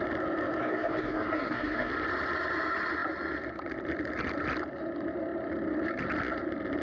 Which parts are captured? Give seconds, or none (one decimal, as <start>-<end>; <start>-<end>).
0.0-0.6; 1.9-6.8